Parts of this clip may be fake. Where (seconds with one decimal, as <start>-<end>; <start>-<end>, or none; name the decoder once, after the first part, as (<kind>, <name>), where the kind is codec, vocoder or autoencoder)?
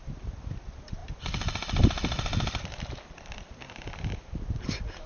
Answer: none